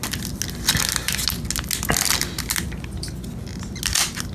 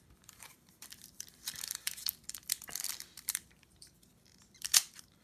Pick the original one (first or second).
first